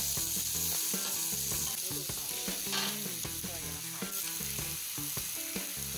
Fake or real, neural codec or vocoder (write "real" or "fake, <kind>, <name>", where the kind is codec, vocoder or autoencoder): real